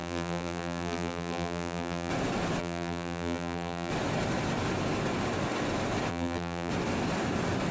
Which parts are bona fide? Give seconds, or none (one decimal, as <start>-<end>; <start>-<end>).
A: 2.1-2.6; 3.9-6.1; 6.7-7.7